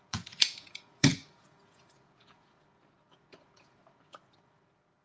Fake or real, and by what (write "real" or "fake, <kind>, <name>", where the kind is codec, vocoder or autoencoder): fake, vocoder, Vocos